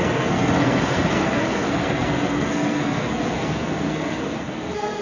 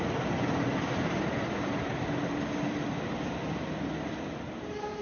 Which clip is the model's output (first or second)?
first